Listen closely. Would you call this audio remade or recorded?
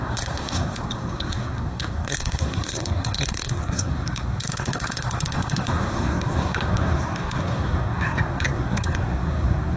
remade